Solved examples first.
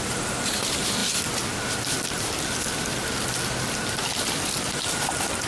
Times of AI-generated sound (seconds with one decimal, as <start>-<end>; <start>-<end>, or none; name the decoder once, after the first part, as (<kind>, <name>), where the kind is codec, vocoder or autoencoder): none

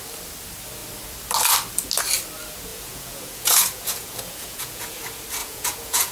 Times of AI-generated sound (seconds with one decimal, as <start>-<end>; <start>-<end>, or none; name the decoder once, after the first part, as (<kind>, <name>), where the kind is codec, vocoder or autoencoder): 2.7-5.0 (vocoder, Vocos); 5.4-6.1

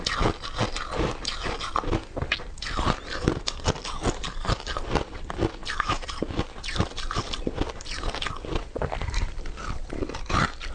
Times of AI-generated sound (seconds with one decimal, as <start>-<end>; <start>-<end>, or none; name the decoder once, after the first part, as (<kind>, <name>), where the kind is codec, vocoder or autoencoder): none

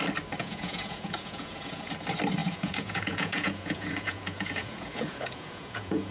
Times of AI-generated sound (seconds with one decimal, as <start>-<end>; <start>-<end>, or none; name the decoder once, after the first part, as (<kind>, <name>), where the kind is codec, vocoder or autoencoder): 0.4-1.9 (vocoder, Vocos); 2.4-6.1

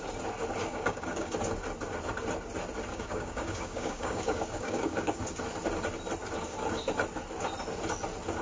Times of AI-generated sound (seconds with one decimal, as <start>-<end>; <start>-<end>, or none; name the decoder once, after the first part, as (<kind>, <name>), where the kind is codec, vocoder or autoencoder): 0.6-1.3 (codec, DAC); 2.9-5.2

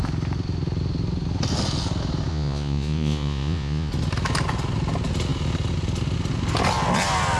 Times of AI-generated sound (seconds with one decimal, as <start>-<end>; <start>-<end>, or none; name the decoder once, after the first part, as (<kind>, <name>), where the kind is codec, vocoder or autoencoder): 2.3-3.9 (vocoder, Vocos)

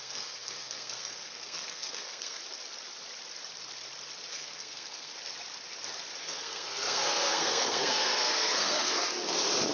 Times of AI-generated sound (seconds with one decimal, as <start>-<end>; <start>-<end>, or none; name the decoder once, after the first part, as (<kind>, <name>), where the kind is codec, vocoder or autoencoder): 0.0-2.4 (codec, SNAC); 4.3-5.1; 6.2-9.0

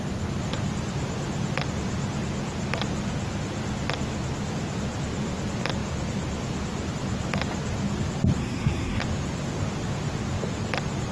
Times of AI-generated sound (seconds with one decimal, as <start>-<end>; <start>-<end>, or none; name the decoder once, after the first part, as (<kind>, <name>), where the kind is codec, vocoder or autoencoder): 8.4-9.0 (codec, SNAC)